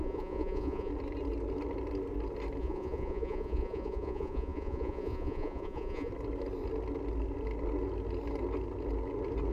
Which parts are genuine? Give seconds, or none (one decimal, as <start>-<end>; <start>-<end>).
0.9-2.6; 6.1-9.5